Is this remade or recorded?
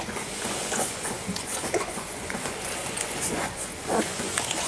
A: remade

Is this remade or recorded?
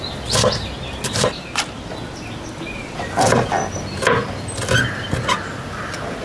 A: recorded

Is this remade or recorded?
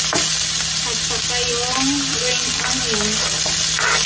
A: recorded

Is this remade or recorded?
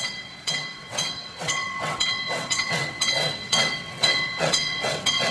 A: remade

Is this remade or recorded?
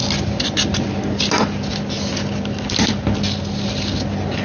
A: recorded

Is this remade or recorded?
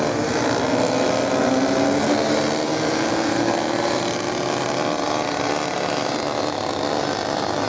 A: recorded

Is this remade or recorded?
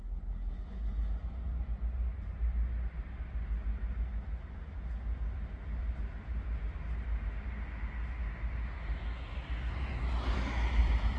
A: recorded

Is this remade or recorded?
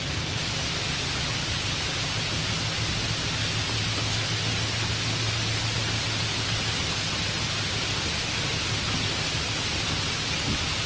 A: recorded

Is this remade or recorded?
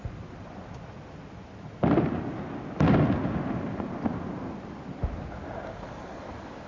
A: recorded